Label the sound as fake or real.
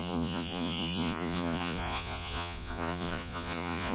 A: fake